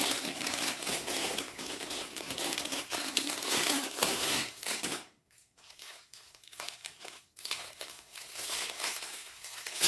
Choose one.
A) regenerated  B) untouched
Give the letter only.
A